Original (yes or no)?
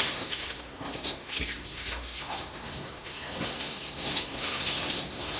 no